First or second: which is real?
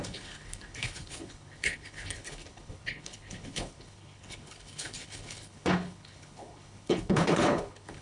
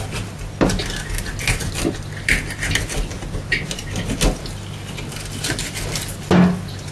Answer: second